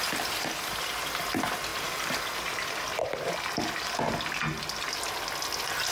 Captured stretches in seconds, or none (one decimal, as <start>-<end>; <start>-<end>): 0.0-1.7; 3.0-5.9